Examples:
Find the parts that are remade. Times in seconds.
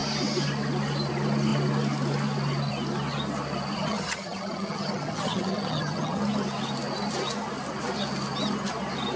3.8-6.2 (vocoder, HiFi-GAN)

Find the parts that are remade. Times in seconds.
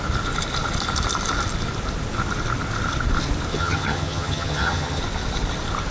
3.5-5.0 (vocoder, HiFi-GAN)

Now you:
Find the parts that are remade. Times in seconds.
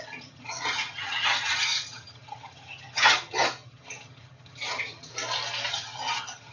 0.0-5.1 (vocoder, HiFi-GAN); 5.7-6.5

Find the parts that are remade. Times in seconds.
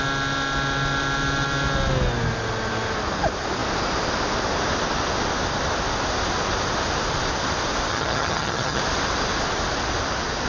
7.9-8.8 (vocoder, HiFi-GAN)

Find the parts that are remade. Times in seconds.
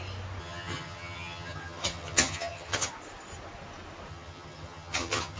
0.4-2.9 (vocoder, HiFi-GAN); 4.1-5.4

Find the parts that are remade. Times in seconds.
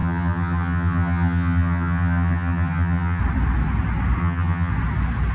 0.0-3.2 (vocoder, HiFi-GAN); 4.2-4.7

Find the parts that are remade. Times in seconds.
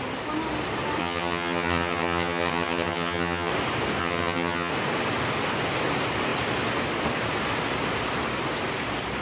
1.0-3.5 (vocoder, HiFi-GAN); 4.0-4.7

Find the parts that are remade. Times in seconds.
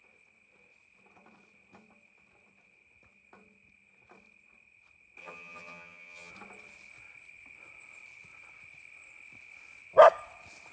5.2-6.3 (vocoder, HiFi-GAN)